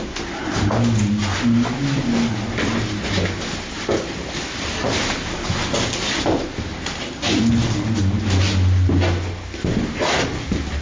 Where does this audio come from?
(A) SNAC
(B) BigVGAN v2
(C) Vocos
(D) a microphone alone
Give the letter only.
D